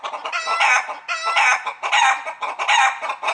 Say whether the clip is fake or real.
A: real